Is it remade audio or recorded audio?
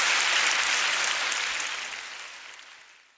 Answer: recorded